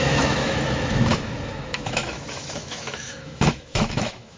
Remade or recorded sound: remade